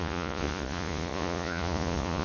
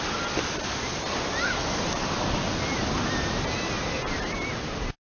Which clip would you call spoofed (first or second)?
first